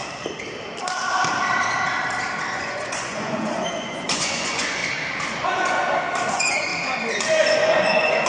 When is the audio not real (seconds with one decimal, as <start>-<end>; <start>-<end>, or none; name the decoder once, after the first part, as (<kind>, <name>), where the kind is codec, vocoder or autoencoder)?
2.5-4.8 (vocoder, Vocos); 5.3-5.8; 6.3-6.7; 7.5-8.3